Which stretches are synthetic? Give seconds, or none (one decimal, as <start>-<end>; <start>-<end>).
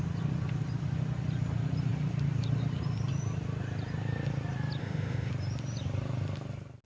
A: 4.8-5.3